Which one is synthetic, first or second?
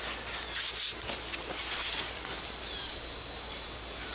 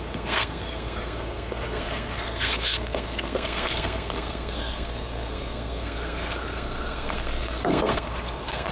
second